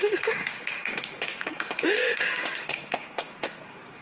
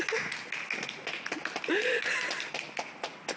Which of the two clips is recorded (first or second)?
second